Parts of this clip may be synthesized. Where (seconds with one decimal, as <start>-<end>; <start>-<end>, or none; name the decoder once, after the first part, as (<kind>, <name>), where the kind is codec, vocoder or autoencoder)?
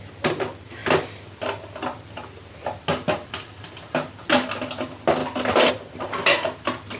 none